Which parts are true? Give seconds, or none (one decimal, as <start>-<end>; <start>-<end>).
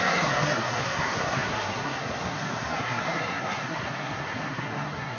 none